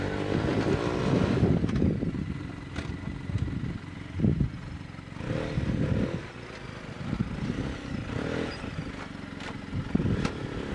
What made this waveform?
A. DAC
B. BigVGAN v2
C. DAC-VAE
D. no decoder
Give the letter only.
D